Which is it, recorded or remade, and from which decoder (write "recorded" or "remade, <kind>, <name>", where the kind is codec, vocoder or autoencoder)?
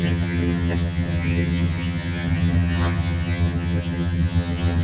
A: remade, vocoder, HiFi-GAN